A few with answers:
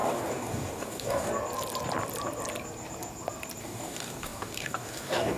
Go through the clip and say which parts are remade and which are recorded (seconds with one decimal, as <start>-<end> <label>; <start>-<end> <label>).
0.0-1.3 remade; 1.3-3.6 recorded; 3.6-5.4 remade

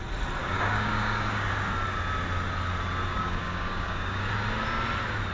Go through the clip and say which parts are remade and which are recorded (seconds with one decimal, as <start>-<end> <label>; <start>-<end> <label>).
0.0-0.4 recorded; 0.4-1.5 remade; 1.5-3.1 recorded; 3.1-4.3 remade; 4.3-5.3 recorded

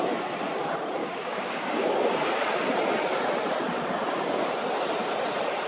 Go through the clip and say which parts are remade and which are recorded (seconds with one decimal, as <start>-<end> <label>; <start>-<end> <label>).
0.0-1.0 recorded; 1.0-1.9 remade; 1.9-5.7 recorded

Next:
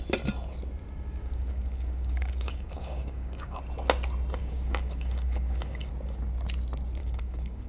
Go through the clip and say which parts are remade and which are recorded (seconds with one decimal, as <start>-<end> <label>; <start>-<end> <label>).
0.0-1.2 recorded; 1.2-3.6 remade; 3.6-4.4 recorded; 4.4-5.9 remade; 5.9-7.0 recorded; 7.0-7.7 remade